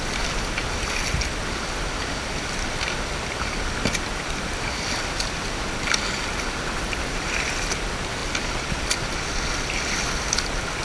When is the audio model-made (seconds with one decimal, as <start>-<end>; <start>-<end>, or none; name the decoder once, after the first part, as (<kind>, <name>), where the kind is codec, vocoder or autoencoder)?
none